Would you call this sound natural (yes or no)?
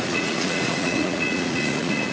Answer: no